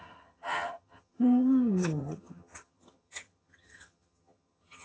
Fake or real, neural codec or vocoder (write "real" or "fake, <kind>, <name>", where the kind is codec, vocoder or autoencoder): fake, vocoder, HiFi-GAN